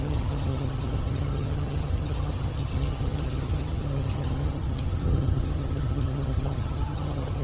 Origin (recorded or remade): remade